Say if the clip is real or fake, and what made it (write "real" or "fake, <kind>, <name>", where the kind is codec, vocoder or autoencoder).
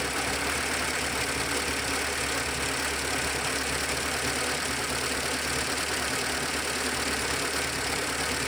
real